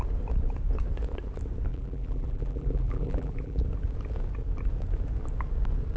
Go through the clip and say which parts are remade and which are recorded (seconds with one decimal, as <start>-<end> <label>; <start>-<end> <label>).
0.0-1.7 recorded; 1.7-3.6 remade; 3.6-6.0 recorded